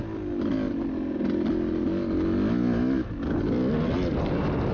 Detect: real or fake real